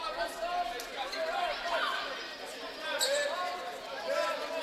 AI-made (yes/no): no